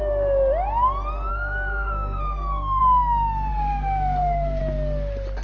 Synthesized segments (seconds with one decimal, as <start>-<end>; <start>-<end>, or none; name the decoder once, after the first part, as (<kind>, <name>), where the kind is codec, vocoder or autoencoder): 1.3-2.8 (codec, SNAC); 3.5-4.6